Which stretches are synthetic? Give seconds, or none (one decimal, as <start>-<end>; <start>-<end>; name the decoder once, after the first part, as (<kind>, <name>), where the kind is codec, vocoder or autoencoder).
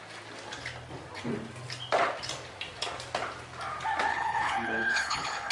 4.1-5.5 (codec, HILCodec)